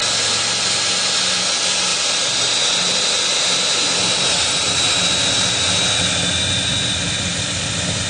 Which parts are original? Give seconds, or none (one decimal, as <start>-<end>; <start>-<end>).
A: 0.0-8.1